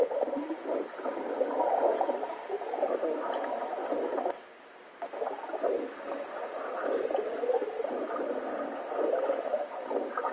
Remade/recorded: recorded